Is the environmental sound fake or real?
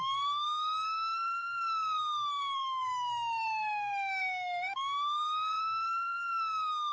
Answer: fake